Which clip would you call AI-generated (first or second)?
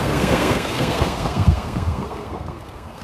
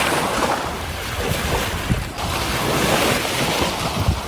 first